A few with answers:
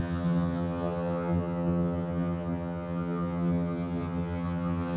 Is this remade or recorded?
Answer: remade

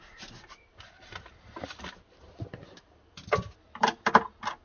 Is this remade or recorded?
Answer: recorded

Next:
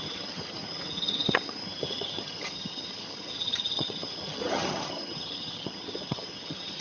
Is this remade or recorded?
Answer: remade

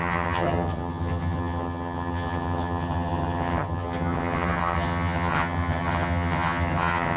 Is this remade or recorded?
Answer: remade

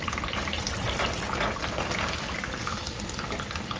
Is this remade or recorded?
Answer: recorded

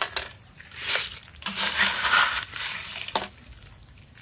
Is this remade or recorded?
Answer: recorded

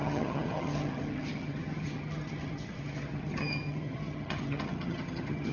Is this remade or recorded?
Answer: remade